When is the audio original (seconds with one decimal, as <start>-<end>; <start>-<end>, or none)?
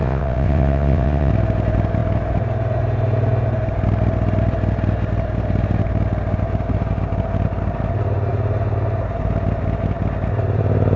1.3-11.0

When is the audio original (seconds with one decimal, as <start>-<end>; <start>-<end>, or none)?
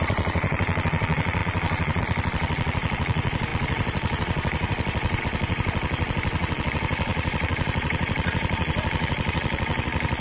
none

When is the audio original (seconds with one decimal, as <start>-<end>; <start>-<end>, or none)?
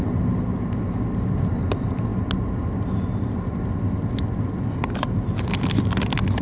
0.0-6.4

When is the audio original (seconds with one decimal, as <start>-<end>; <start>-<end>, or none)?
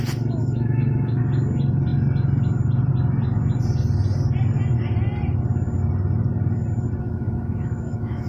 0.0-0.4; 1.2-7.0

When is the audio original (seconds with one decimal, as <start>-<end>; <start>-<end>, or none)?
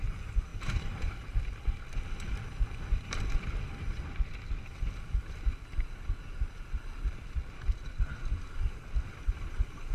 0.0-9.9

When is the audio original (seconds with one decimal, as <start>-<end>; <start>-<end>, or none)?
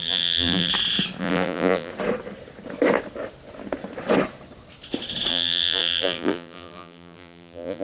0.7-1.2; 1.9-5.3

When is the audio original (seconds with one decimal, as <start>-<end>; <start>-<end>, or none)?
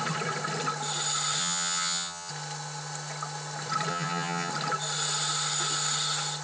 0.0-1.4; 2.3-3.9; 4.5-6.4